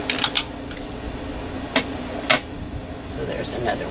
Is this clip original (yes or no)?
yes